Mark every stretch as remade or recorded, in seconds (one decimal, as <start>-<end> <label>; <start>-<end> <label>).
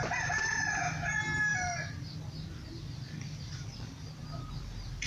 0.0-5.1 recorded